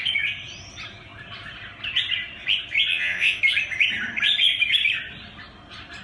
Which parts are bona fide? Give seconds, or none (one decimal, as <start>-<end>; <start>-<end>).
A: 0.0-2.9; 3.4-6.0